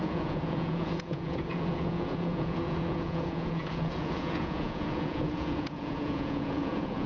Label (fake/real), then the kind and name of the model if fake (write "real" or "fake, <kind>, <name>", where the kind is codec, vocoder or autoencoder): fake, vocoder, Vocos